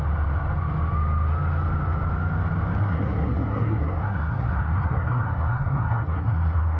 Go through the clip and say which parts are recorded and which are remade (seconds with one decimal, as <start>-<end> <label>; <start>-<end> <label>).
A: 0.0-2.8 recorded; 2.8-6.8 remade